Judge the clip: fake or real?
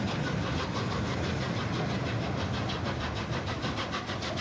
real